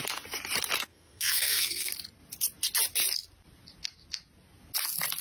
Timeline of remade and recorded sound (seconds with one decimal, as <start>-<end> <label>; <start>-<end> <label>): 0.0-0.9 recorded; 0.9-1.9 remade; 1.9-5.2 recorded